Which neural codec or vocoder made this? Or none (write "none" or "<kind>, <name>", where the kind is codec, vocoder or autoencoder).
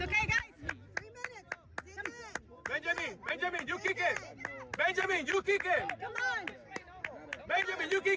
none